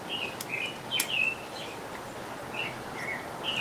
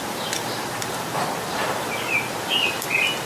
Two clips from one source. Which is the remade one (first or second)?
second